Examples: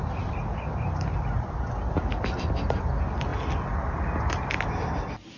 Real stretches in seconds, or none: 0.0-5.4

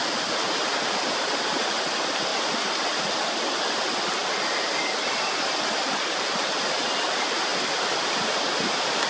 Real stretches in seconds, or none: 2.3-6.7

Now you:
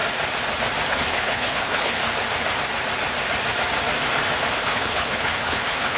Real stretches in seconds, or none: 0.0-0.9; 2.0-4.5

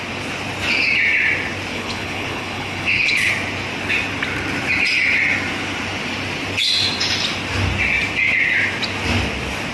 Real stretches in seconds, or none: 0.0-1.7; 3.3-9.7